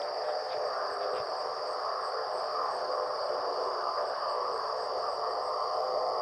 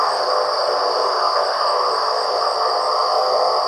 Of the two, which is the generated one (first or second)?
first